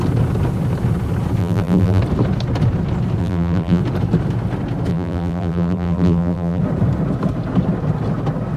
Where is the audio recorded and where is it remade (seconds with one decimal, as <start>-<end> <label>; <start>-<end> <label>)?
0.0-1.4 recorded; 1.4-2.0 remade; 2.0-3.2 recorded; 3.2-3.8 remade; 3.8-4.9 recorded; 4.9-6.6 remade; 6.6-8.6 recorded